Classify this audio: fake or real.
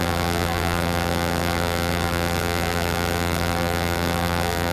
fake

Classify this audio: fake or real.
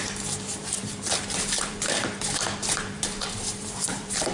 fake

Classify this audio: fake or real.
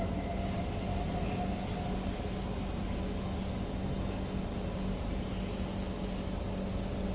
real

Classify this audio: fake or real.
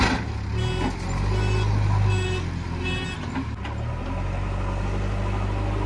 real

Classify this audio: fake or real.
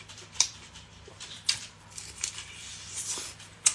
fake